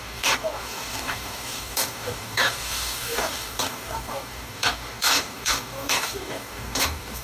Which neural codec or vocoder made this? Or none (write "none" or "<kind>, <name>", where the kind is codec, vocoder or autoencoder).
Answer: codec, DAC